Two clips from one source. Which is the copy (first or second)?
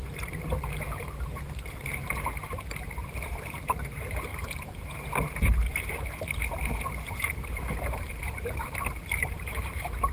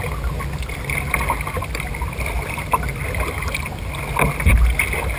first